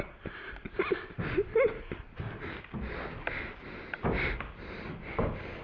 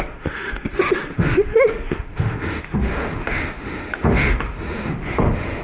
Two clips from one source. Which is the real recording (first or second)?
first